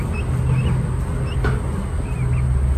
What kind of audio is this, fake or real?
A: real